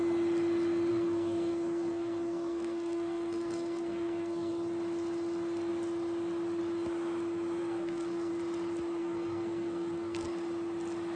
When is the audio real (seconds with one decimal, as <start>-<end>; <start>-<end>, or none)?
0.0-0.9; 4.5-7.6; 8.3-9.0; 10.3-11.2